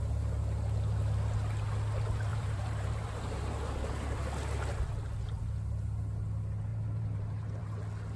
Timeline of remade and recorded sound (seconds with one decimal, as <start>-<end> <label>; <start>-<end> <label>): 0.0-2.3 recorded; 2.3-3.3 remade; 3.3-6.7 recorded; 6.7-7.7 remade; 7.7-8.2 recorded